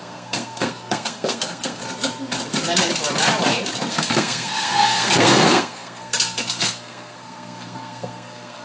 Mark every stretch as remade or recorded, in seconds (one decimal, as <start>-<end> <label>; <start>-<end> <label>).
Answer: 0.0-1.8 remade; 1.8-3.9 recorded; 3.9-8.6 remade